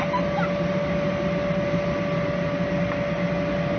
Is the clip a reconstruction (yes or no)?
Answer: no